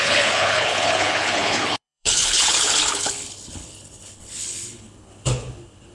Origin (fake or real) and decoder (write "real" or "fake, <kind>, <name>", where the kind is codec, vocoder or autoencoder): fake, codec, HILCodec